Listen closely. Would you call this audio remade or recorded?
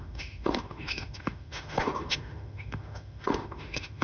remade